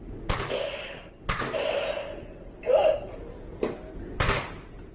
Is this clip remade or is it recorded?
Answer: recorded